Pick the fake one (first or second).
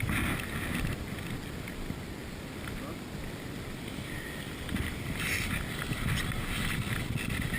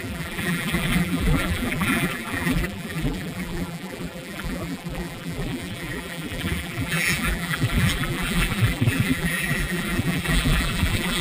second